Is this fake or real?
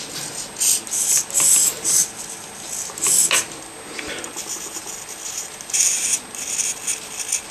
real